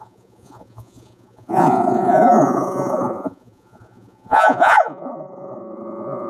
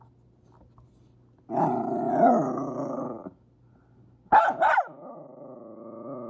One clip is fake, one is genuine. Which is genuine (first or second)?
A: second